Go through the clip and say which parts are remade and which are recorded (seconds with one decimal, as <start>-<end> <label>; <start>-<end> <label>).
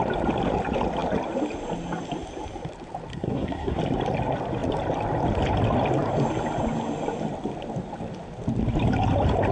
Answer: 0.0-3.1 recorded; 3.1-3.8 remade; 3.8-9.5 recorded